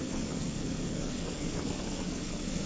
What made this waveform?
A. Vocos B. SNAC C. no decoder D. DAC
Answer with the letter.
B